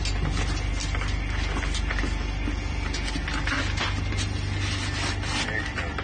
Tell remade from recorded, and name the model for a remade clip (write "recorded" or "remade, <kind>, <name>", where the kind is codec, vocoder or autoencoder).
recorded